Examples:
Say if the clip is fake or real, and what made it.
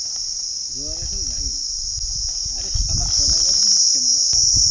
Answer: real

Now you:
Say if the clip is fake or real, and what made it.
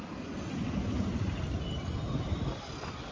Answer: real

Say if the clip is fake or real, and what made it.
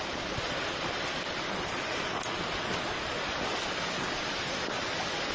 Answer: real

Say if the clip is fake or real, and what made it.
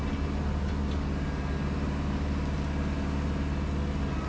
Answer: real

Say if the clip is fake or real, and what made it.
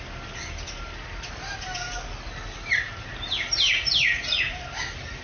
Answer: real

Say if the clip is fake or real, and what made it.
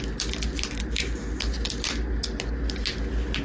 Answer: real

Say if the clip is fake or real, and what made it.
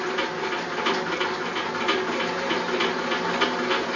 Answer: real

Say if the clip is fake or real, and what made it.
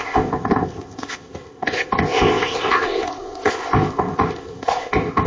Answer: fake, codec, ZipCodec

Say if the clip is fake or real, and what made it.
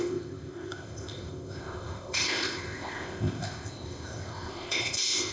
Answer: fake, codec, ZipCodec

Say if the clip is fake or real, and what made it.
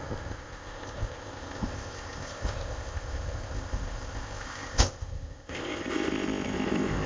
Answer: fake, codec, ZipCodec